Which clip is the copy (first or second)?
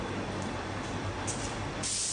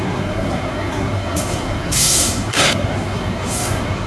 second